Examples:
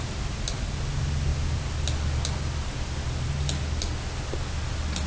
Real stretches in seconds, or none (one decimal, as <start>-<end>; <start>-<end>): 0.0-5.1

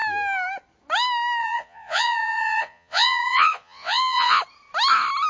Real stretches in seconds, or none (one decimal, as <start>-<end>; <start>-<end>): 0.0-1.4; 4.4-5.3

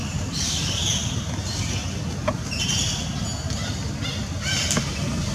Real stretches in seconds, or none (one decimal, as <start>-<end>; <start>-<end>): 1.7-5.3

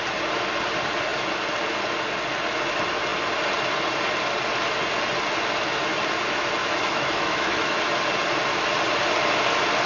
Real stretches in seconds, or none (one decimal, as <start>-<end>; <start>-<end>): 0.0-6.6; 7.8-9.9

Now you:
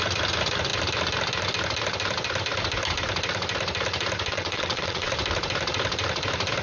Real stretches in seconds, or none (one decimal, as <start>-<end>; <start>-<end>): 0.0-4.3; 5.1-6.6

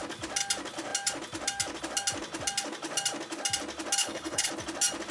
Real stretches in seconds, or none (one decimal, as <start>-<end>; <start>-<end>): 0.0-4.0; 4.5-5.1

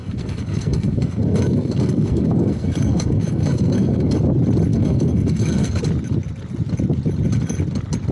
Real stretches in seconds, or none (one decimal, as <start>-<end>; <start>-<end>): 4.2-4.7; 5.8-8.1